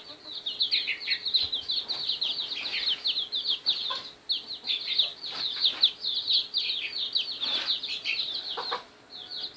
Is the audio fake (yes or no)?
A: no